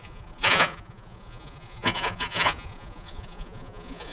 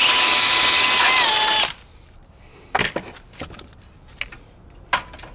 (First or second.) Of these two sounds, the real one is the second